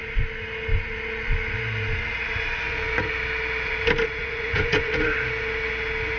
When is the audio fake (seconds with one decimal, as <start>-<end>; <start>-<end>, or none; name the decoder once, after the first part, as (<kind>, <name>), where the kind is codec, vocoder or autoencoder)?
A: 4.2-4.9 (vocoder, Vocos)